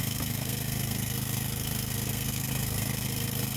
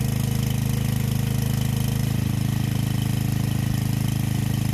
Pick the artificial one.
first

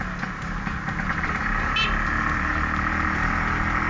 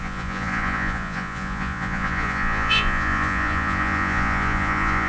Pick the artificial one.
second